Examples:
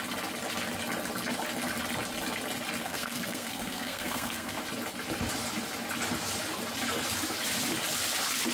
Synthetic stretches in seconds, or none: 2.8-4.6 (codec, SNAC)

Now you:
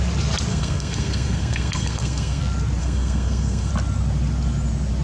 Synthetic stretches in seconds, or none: 0.5-2.4 (codec, SNAC); 2.8-3.7